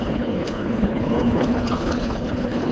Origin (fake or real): fake